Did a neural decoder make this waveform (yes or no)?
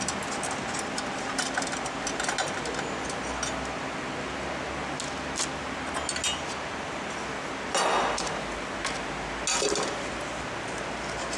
no